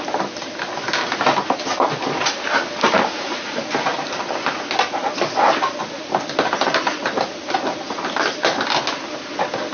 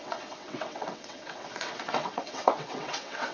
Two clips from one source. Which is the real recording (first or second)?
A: first